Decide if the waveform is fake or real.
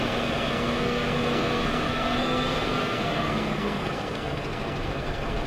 fake